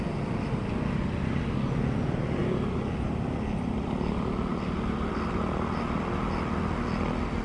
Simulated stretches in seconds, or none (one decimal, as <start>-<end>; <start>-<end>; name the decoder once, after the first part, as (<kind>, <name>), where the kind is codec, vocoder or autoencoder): none

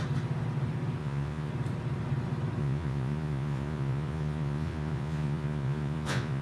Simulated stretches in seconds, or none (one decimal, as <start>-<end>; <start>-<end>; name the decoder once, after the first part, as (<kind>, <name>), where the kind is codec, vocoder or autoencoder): 1.0-1.5 (vocoder, Vocos); 2.6-6.4

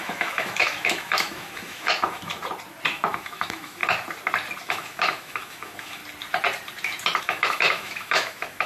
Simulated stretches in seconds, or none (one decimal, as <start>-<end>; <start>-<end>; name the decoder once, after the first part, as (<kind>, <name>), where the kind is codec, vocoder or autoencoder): 0.0-2.4 (autoencoder, DAC-VAE); 2.9-3.8; 4.6-6.0; 7.2-8.7

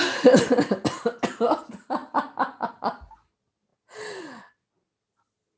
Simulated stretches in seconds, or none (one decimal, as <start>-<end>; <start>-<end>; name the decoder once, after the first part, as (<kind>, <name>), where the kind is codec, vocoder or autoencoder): none